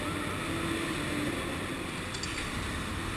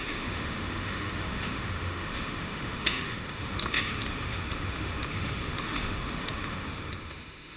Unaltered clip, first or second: first